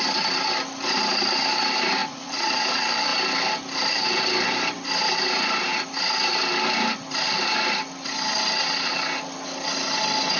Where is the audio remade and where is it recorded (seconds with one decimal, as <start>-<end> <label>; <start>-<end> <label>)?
0.0-2.0 recorded; 2.0-2.6 remade; 2.6-10.4 recorded